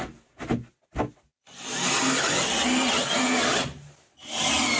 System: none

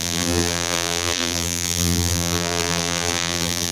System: vocoder, BigVGAN v2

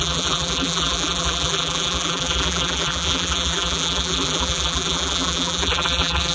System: vocoder, BigVGAN v2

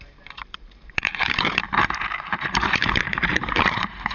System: vocoder, BigVGAN v2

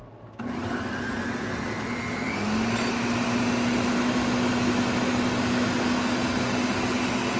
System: none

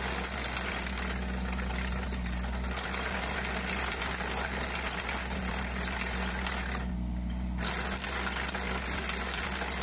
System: none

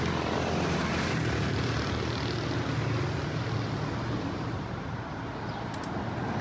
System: none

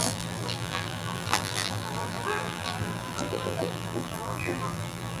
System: vocoder, BigVGAN v2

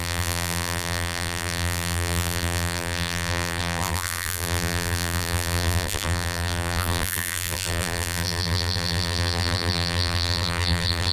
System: vocoder, BigVGAN v2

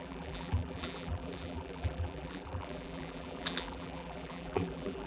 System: vocoder, BigVGAN v2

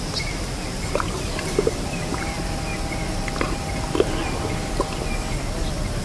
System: none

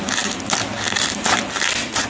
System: vocoder, BigVGAN v2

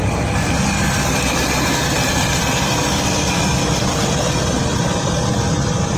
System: none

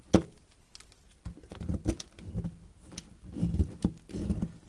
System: none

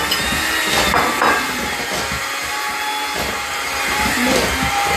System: none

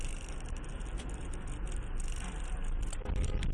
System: none